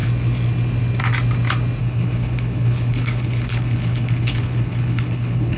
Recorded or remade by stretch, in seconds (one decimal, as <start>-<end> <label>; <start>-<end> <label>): 0.0-1.8 recorded; 1.8-5.6 remade